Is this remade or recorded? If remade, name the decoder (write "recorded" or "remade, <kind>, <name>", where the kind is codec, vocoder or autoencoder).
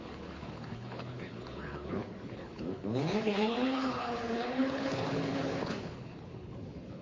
remade, codec, HILCodec